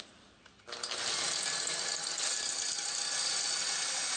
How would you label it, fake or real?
real